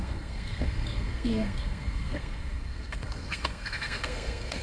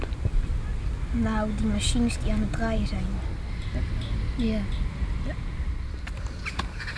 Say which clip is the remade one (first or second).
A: first